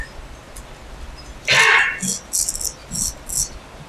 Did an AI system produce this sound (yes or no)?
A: no